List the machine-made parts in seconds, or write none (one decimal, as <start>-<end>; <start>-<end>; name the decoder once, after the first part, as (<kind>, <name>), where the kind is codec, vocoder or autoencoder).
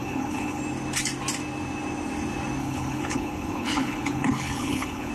0.0-0.6 (codec, HILCodec); 2.6-5.1